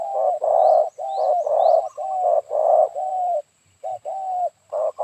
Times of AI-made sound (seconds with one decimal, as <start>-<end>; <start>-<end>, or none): 0.6-1.8; 3.1-5.0